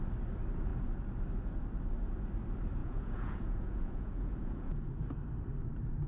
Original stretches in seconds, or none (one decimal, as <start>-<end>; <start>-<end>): 0.0-2.8; 4.9-6.1